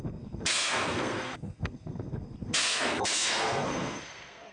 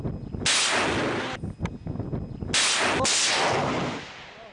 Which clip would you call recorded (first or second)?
second